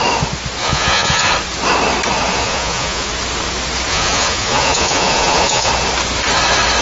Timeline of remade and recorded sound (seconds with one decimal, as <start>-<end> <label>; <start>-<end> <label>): 0.0-0.6 recorded; 0.6-1.3 remade; 1.3-2.3 recorded; 2.3-3.1 remade; 3.1-3.9 recorded; 3.9-5.7 remade; 5.7-6.8 recorded